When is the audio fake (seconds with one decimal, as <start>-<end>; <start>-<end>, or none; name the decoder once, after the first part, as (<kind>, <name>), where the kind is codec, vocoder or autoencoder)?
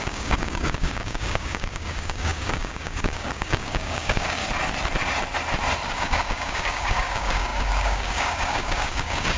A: 0.0-4.4 (codec, DAC); 5.9-9.4